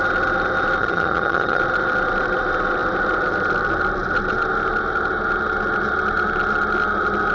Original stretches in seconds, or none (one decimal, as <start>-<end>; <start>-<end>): 0.0-0.8; 1.6-7.3